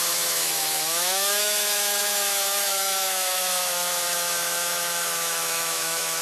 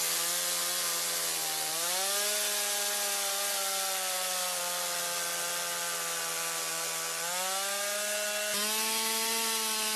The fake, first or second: first